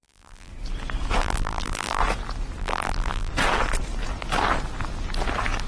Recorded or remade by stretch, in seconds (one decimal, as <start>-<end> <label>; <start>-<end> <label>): 0.0-0.5 remade; 0.5-1.2 recorded; 1.2-2.0 remade; 2.0-2.6 recorded; 2.6-3.3 remade; 3.3-5.7 recorded